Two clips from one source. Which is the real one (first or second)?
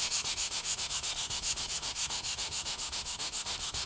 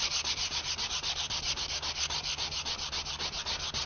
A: second